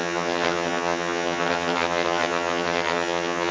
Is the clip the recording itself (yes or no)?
no